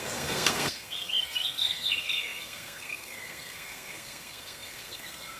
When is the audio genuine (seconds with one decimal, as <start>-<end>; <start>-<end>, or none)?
none